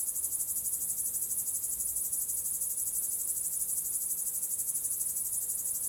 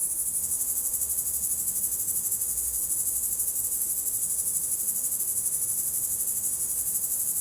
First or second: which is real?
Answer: first